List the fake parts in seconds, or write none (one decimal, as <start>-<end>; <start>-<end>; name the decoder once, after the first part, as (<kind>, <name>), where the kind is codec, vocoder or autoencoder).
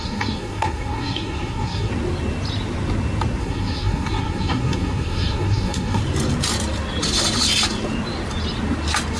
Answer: 0.0-1.9 (codec, SNAC); 3.4-6.0